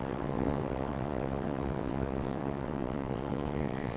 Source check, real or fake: fake